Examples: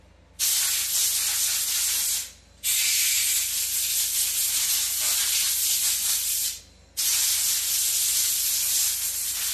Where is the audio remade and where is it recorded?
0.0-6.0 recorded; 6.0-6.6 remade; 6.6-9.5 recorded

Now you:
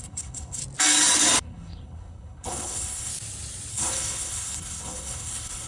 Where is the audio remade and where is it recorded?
0.0-0.6 remade; 0.6-1.4 recorded; 1.4-3.1 remade; 3.1-3.7 recorded; 3.7-5.7 remade

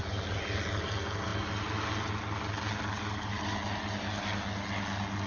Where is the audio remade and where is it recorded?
0.0-5.3 recorded

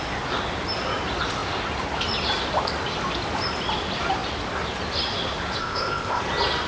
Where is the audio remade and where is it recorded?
0.0-5.6 recorded; 5.6-6.2 remade; 6.2-6.7 recorded

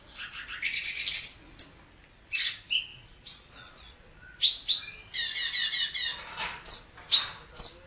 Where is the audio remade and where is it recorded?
0.0-2.9 recorded; 2.9-4.4 remade; 4.4-7.9 recorded